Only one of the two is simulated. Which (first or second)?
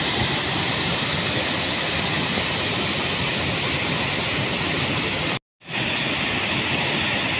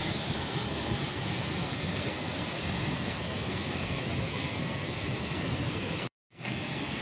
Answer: second